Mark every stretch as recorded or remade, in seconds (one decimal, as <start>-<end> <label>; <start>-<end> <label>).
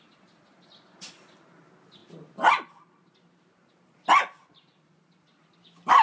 0.0-6.0 recorded